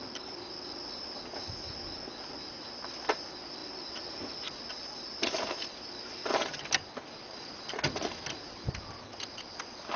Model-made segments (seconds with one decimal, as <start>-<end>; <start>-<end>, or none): none